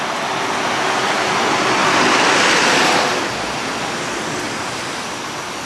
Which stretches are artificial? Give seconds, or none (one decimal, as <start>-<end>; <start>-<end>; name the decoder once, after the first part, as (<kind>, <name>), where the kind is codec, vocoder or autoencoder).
none